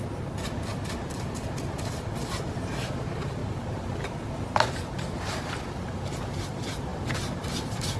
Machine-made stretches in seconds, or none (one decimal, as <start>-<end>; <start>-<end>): none